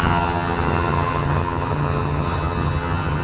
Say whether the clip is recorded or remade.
remade